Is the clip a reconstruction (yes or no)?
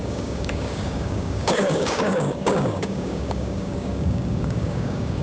yes